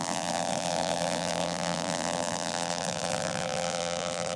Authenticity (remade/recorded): remade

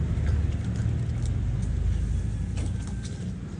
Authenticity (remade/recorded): recorded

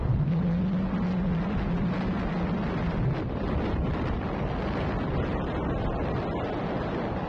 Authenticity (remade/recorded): recorded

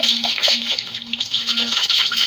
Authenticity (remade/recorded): remade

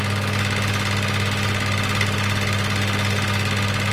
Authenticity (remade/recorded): recorded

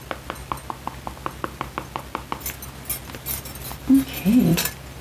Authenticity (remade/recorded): recorded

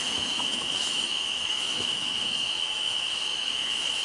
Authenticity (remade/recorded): remade